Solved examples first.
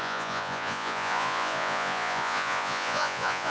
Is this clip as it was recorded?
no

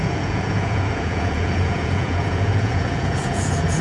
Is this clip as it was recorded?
no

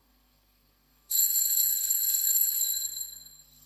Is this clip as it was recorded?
no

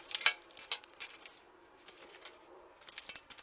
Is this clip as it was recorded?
yes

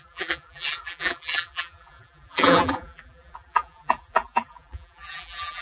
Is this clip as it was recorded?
no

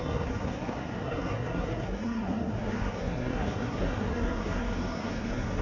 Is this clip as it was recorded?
no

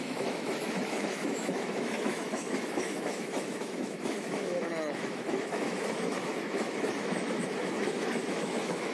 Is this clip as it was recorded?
no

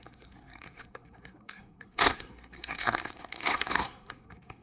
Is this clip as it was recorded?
no